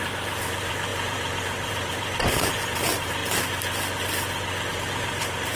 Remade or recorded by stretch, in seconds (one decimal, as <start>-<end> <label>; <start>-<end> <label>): 0.0-3.2 remade; 3.2-4.7 recorded; 4.7-5.6 remade